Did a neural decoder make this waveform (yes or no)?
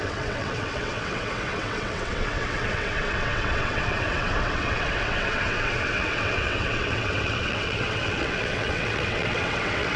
yes